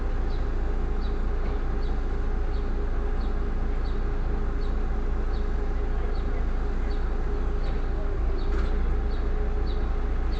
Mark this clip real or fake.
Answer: real